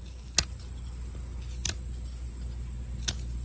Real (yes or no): yes